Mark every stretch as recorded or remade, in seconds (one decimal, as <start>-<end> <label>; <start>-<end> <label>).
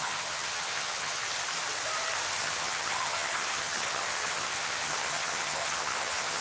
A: 0.0-1.2 remade; 1.2-2.4 recorded; 2.4-6.4 remade